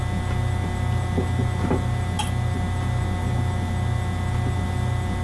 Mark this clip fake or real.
real